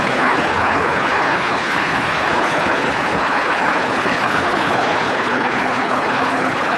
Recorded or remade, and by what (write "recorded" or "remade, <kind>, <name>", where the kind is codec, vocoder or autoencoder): remade, codec, HILCodec